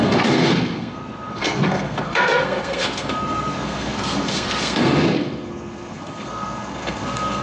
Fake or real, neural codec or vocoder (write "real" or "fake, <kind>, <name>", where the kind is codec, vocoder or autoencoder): fake, codec, SNAC